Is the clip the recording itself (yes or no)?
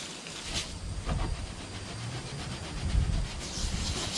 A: yes